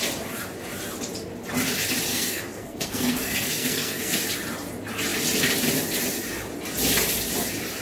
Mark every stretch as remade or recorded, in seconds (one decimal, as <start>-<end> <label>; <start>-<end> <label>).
0.0-2.1 recorded; 2.1-4.3 remade; 4.3-7.8 recorded